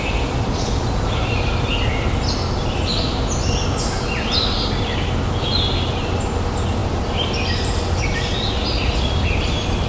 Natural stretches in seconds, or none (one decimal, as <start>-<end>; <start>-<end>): 0.0-9.9